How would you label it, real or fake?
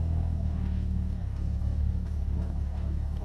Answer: fake